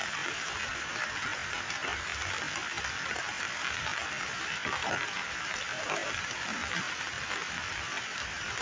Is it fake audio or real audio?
real